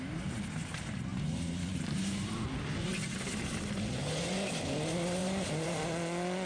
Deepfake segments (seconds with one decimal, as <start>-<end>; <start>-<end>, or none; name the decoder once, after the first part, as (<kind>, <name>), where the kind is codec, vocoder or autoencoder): 1.1-2.3 (vocoder, BigVGAN v2); 5.2-5.8